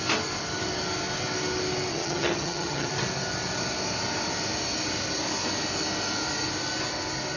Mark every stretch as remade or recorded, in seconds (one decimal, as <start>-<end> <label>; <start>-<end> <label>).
0.0-1.9 recorded; 1.9-2.9 remade; 2.9-7.4 recorded